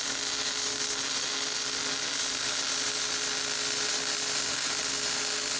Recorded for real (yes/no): yes